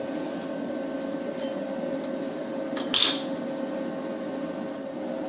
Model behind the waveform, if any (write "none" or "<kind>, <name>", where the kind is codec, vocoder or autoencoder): none